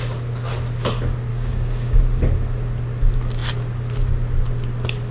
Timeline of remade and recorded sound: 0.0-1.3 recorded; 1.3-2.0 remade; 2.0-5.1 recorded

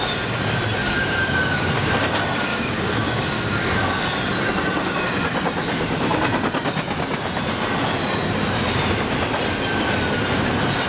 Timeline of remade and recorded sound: 0.0-0.8 recorded; 0.8-1.9 remade; 1.9-2.5 recorded; 2.5-3.6 remade; 3.6-10.9 recorded

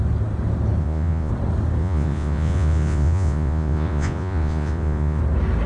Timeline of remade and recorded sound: 0.0-0.8 recorded; 0.8-1.3 remade; 1.3-1.8 recorded; 1.8-5.2 remade; 5.2-5.7 recorded

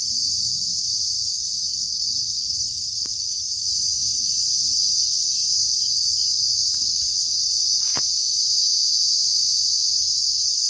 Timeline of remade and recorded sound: 0.0-0.7 remade; 0.7-1.3 recorded; 1.3-7.9 remade; 7.9-10.0 recorded; 10.0-10.7 remade

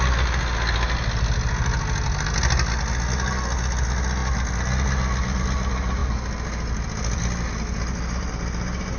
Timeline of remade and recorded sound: 0.0-9.0 recorded

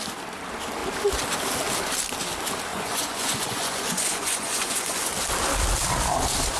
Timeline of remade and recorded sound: 0.0-2.7 recorded; 2.7-5.1 remade; 5.1-6.6 recorded

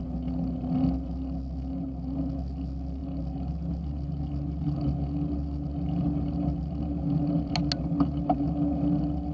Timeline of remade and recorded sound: 0.0-9.3 recorded